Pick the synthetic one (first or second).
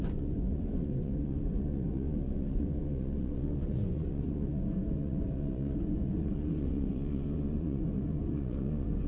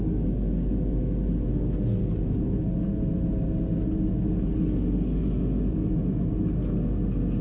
first